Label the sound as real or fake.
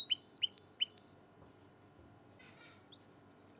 real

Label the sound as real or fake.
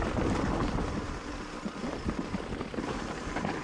real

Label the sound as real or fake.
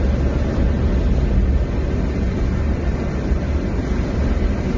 real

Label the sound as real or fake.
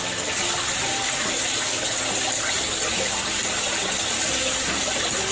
fake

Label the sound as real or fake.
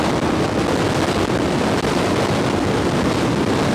real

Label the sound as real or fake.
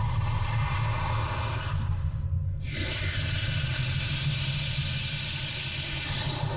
real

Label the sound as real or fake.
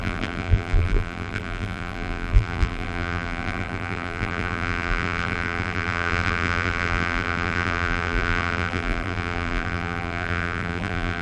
fake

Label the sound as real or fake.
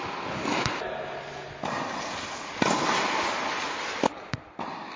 real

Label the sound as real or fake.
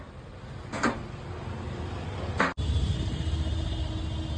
real